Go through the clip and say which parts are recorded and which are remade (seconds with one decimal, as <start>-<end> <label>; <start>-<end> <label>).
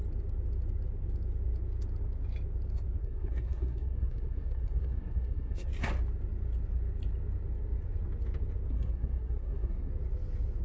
0.0-3.0 recorded; 3.0-5.7 remade; 5.7-8.7 recorded; 8.7-9.9 remade; 9.9-10.6 recorded